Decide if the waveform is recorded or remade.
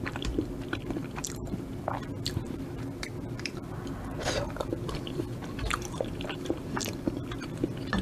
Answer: remade